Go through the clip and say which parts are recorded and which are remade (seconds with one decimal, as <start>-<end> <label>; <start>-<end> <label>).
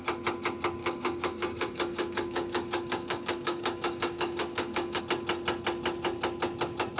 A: 0.0-0.8 recorded; 0.8-5.0 remade; 5.0-7.0 recorded